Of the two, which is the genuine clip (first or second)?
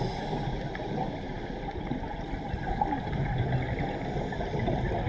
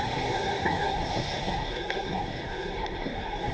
first